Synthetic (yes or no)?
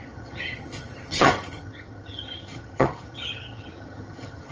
yes